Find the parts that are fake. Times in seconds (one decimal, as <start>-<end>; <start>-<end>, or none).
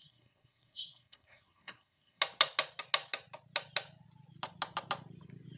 0.0-2.2